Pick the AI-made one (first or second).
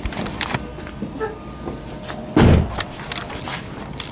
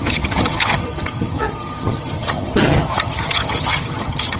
second